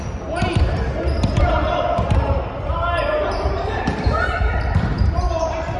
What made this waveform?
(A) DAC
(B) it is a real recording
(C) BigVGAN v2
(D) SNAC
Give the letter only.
C